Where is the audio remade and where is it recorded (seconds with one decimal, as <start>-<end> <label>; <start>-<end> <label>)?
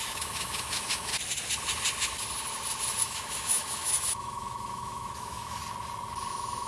0.0-1.1 remade; 1.1-3.0 recorded; 3.0-5.6 remade; 5.6-6.3 recorded; 6.3-6.7 remade